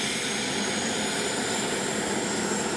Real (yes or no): yes